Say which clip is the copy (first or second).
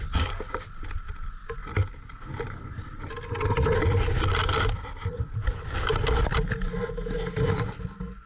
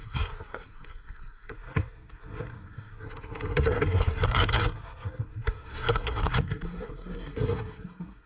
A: second